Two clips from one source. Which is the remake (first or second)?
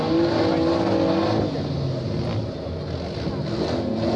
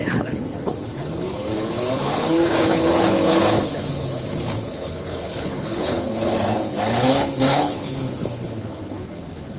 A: second